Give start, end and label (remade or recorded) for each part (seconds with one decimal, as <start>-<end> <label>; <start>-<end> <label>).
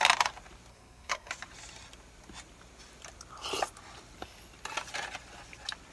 0.0-0.7 recorded; 0.7-1.3 remade; 1.3-5.9 recorded